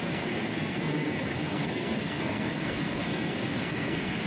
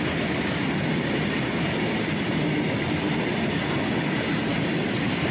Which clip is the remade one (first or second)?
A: first